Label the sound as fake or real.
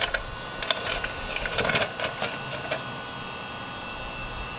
real